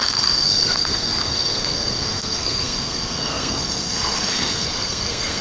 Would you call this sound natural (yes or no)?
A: no